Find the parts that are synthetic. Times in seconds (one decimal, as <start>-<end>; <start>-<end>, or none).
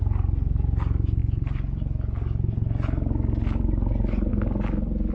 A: 1.2-4.3